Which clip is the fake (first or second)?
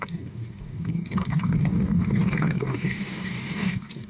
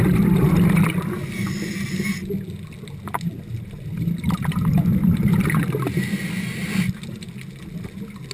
first